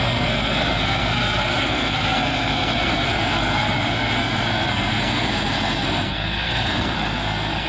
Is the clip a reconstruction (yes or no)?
yes